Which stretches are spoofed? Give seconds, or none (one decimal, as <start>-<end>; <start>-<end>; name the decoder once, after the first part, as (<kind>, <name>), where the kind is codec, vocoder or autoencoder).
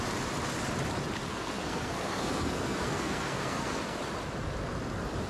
1.3-4.0 (codec, SNAC)